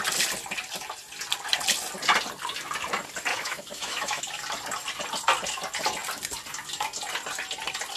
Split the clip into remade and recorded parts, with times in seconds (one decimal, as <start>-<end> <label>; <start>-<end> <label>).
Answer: 0.0-3.3 recorded; 3.3-4.2 remade; 4.2-8.0 recorded